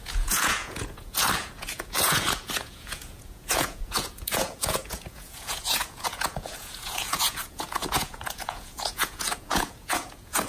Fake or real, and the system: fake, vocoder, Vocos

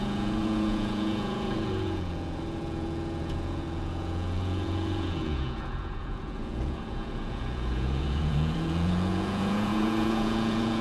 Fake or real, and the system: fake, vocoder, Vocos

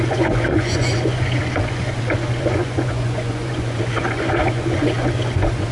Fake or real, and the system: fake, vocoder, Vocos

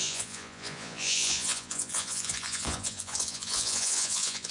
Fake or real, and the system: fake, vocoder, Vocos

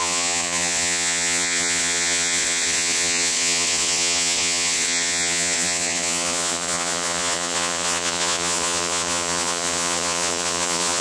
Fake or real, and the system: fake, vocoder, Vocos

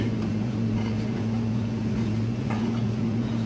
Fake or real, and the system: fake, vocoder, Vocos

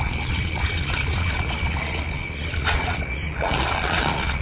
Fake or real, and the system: fake, vocoder, Vocos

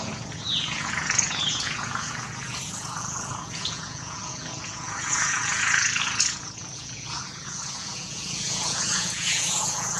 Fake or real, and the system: fake, vocoder, Vocos